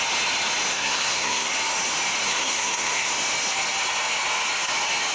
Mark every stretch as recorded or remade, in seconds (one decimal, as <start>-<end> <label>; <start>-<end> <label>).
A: 0.0-0.7 recorded; 0.7-1.5 remade; 1.5-2.2 recorded; 2.2-3.1 remade; 3.1-5.1 recorded